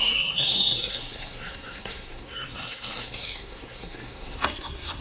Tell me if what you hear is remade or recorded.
remade